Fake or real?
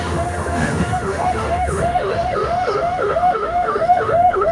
fake